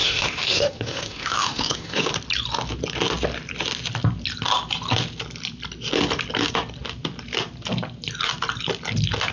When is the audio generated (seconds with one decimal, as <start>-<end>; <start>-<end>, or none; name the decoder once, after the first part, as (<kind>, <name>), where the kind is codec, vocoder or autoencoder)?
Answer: 0.0-2.1 (autoencoder, DAC-VAE)